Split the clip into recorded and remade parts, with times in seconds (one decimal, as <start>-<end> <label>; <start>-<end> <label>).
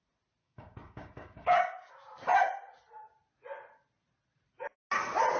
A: 0.0-0.4 recorded; 0.4-1.9 remade; 1.9-5.4 recorded